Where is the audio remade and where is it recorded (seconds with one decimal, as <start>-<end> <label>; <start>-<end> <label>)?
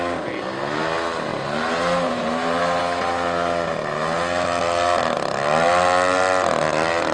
0.0-1.3 recorded; 1.3-2.8 remade; 2.8-7.1 recorded